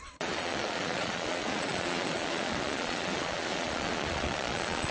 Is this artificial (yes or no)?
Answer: yes